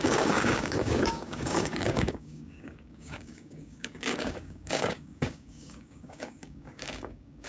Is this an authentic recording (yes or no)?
no